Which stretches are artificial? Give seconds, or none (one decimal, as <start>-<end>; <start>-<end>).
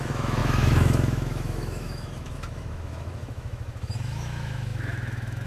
0.0-5.5